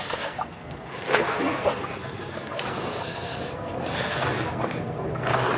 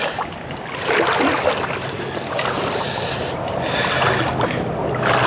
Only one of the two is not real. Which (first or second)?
first